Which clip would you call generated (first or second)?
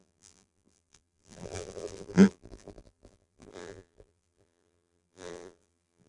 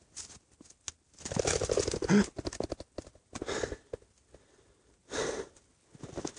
first